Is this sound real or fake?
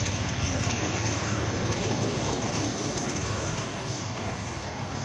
fake